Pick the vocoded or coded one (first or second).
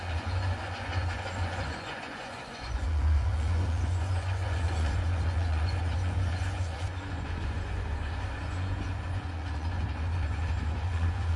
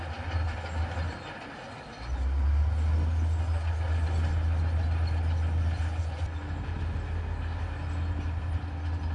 first